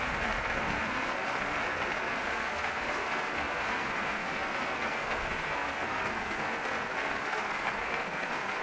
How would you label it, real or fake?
fake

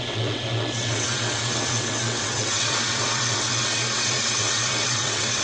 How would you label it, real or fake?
fake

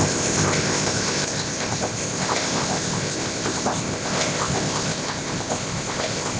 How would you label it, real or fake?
fake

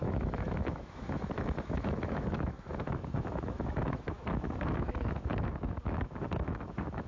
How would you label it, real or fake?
fake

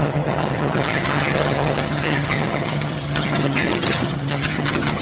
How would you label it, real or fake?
fake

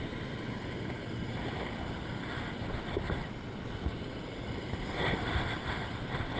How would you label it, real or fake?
fake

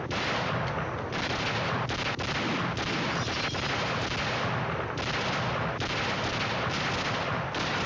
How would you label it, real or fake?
real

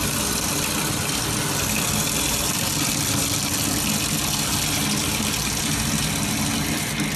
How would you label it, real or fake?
real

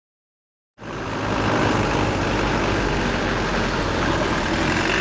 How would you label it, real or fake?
real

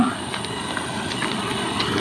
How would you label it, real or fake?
real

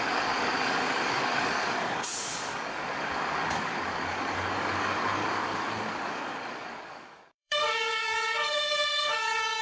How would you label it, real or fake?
fake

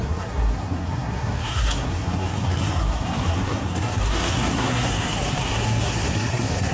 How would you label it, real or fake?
fake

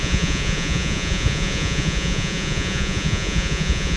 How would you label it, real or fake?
fake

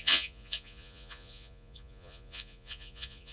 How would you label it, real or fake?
fake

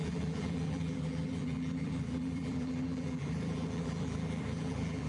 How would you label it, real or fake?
fake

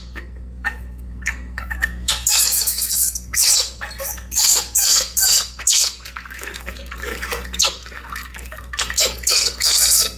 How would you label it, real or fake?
fake